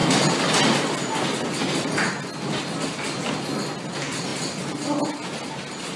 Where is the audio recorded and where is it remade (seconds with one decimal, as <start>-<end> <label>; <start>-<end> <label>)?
0.0-6.0 recorded